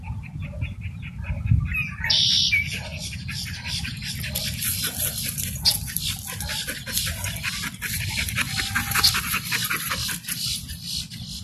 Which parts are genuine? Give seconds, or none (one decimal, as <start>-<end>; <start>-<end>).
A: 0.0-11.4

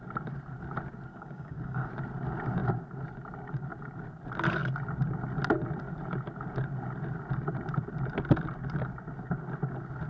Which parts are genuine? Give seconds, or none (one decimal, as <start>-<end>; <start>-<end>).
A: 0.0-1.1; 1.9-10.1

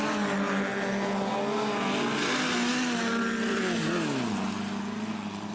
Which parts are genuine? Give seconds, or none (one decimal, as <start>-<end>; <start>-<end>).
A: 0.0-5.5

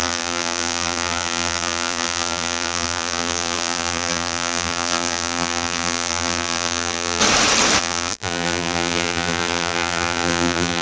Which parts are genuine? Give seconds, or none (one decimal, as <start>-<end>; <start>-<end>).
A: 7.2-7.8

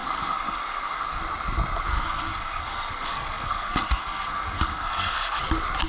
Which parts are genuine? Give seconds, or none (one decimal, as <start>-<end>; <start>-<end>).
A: 1.2-1.9; 5.4-5.9

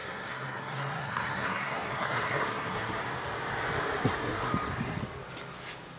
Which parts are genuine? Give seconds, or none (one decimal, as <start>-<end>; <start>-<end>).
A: 3.0-4.0; 4.5-6.0

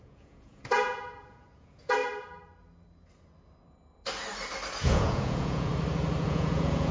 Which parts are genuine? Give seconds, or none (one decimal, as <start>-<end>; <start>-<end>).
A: 2.0-4.8; 5.7-6.2

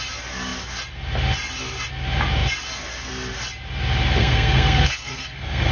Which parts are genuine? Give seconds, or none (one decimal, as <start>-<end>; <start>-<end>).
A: 0.0-4.2